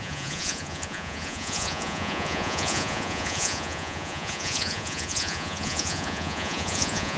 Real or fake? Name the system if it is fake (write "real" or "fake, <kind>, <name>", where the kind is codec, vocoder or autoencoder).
fake, vocoder, Vocos